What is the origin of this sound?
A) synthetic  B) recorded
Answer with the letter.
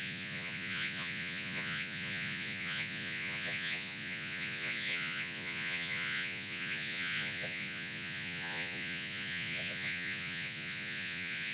A